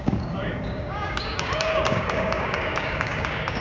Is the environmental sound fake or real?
fake